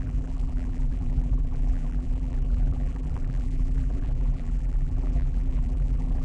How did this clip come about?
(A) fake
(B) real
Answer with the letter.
A